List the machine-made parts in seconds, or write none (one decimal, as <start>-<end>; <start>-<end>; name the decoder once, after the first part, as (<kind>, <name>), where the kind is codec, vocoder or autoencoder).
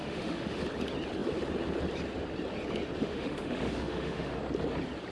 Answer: 0.0-0.6 (autoencoder, DAC-VAE); 3.0-4.4